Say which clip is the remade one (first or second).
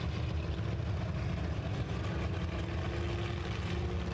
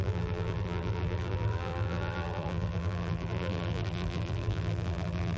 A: second